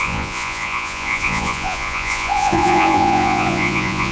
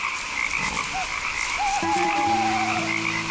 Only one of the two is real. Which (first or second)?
second